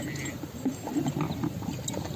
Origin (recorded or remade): recorded